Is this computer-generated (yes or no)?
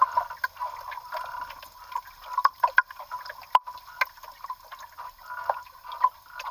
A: no